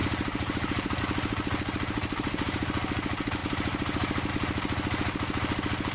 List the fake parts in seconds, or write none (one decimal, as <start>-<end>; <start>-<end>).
0.0-1.0; 2.0-2.6; 3.4-4.3